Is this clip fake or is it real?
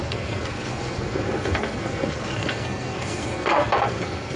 fake